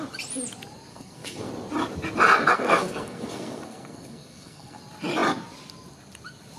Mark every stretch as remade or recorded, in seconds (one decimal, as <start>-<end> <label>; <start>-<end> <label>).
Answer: 0.0-0.9 recorded; 0.9-1.5 remade; 1.5-2.5 recorded; 2.5-4.8 remade; 4.8-6.6 recorded